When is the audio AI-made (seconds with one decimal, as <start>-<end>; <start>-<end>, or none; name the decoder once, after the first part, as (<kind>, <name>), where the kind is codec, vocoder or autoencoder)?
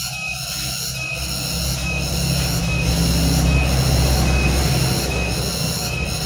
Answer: none